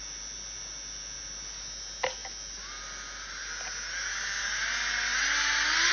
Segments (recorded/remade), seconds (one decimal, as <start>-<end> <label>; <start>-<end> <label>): 0.0-5.9 recorded